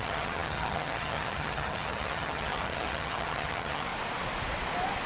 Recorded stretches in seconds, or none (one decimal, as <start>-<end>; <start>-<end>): 3.9-5.1